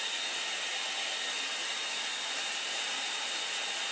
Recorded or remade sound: recorded